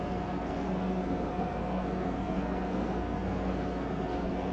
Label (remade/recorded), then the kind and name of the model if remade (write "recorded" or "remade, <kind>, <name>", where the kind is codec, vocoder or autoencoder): remade, codec, SNAC